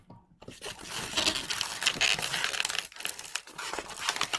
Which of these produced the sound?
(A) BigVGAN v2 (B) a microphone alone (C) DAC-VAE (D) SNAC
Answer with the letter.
B